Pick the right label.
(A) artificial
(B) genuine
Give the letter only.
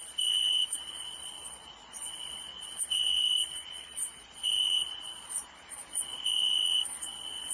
A